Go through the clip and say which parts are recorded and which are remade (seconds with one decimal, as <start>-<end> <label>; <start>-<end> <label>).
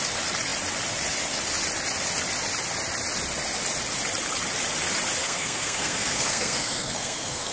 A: 0.0-5.2 recorded; 5.2-7.5 remade